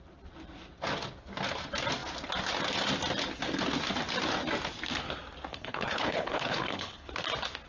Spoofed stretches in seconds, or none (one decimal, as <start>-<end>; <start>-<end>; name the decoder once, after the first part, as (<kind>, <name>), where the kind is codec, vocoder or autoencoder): 5.5-7.1 (codec, HILCodec)